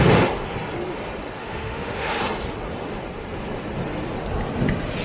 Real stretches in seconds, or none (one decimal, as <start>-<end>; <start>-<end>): 0.0-1.4; 2.2-5.0